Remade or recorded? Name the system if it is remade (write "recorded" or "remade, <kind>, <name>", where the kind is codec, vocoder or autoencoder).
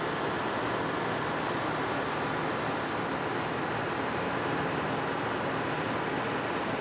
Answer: recorded